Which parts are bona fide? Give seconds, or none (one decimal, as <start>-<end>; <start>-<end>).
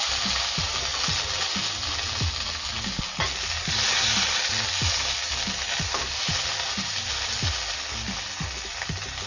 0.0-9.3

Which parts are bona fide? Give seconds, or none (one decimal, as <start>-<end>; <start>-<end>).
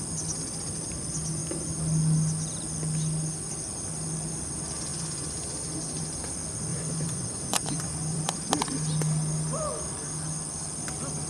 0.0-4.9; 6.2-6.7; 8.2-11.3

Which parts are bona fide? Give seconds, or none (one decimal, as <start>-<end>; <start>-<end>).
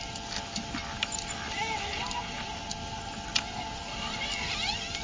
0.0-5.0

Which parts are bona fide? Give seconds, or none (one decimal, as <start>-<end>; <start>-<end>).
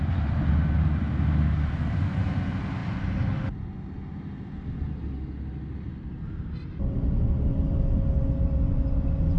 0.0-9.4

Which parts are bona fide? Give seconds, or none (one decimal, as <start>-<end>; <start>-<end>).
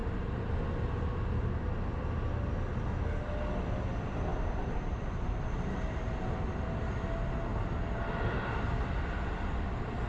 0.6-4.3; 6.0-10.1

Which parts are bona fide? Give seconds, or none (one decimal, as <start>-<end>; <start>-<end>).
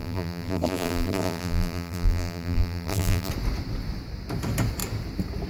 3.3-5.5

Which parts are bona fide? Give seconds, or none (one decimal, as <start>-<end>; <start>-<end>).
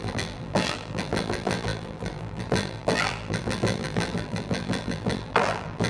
none